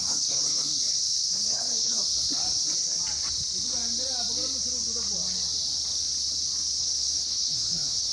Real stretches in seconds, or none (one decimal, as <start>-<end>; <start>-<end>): 0.7-1.4; 2.0-6.8